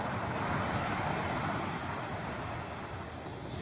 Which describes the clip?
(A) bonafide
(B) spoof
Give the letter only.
A